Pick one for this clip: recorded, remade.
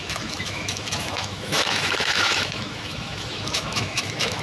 remade